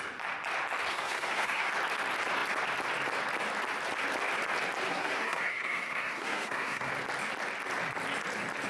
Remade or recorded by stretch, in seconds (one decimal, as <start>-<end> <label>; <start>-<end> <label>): 0.0-0.9 recorded; 0.9-1.7 remade; 1.7-4.9 recorded; 4.9-6.9 remade; 6.9-8.7 recorded